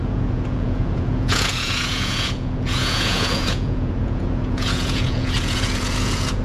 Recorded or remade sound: remade